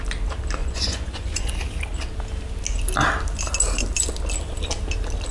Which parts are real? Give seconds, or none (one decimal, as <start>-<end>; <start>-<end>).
0.0-0.6; 1.5-5.3